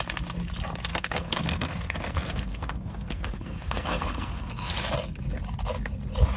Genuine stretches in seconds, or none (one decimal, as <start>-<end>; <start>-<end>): 0.0-0.9; 4.7-6.4